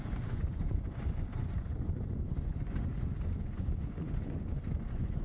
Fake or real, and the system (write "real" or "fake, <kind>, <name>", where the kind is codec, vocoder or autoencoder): fake, vocoder, Vocos